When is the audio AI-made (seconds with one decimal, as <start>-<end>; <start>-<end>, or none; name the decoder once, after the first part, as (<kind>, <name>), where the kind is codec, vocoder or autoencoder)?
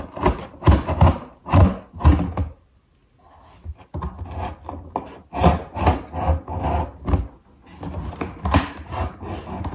none